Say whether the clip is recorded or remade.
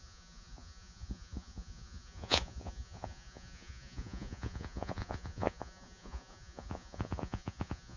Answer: remade